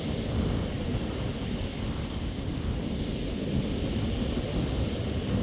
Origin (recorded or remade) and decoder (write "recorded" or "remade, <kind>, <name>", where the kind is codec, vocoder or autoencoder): recorded